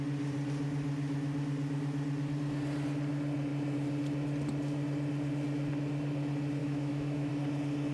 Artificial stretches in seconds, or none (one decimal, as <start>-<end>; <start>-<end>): 6.6-7.3